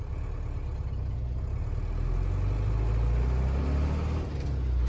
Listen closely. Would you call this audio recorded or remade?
recorded